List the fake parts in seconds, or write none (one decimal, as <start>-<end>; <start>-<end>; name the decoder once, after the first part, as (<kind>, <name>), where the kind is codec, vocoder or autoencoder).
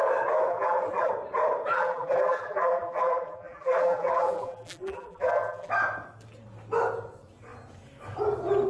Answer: 0.5-1.1 (vocoder, BigVGAN v2); 1.7-5.7